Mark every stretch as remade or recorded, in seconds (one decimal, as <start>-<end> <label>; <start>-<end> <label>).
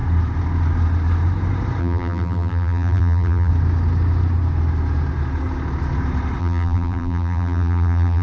0.0-1.8 recorded; 1.8-3.5 remade; 3.5-6.4 recorded; 6.4-8.2 remade